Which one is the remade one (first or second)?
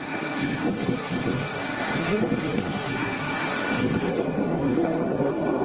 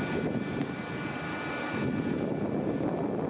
first